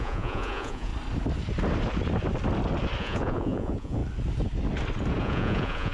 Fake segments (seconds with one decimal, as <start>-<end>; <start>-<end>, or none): 0.0-0.9; 3.0-4.0; 5.2-5.9